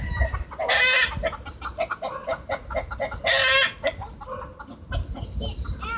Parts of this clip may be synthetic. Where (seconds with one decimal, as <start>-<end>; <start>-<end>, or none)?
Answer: none